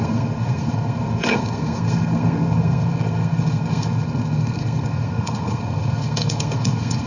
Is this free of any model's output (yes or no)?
no